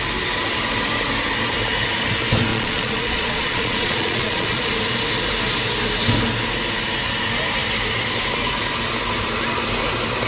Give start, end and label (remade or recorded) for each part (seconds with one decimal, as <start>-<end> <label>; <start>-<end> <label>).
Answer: 0.0-2.5 recorded; 2.5-4.7 remade; 4.7-10.3 recorded